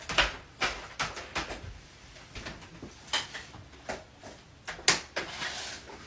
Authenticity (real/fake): real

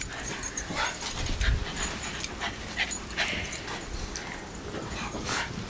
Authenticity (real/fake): fake